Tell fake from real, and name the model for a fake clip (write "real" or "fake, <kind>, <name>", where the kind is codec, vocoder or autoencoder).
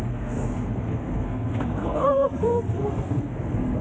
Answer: fake, codec, SNAC